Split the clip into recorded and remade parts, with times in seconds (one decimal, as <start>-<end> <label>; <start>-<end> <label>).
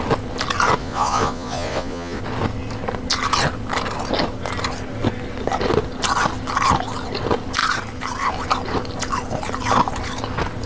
0.0-0.8 recorded; 0.8-2.2 remade; 2.2-10.7 recorded